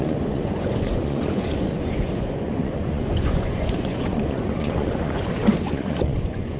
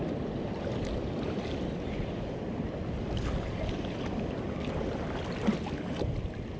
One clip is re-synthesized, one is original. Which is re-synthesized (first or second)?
first